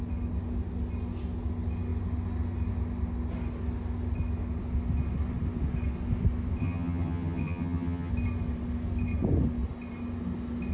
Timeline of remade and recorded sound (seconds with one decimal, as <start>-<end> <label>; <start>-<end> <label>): 0.0-6.6 recorded; 6.6-8.1 remade; 8.1-10.7 recorded